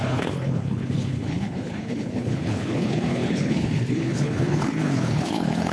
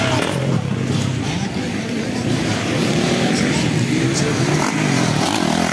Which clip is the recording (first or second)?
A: second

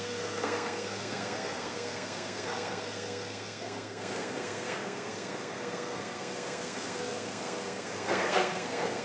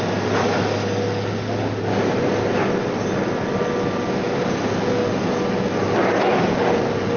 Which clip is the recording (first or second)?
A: second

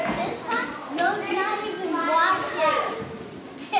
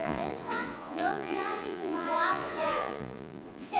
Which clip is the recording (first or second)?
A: first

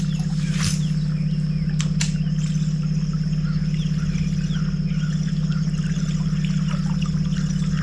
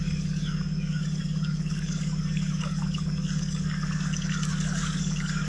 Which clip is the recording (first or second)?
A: first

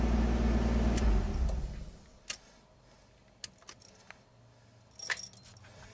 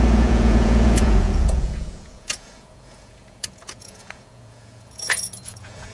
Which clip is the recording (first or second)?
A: first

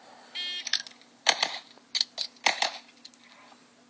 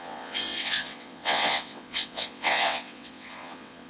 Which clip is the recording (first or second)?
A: first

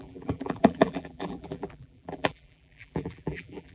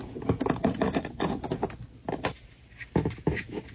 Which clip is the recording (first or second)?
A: second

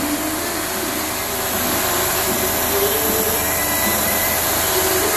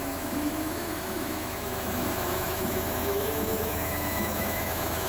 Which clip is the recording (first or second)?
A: first